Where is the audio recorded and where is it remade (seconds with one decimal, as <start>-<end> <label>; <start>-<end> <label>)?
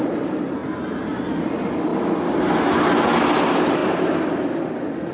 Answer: 0.0-5.1 recorded